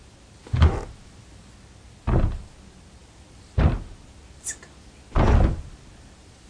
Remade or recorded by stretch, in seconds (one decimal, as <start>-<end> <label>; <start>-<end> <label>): 0.0-6.5 recorded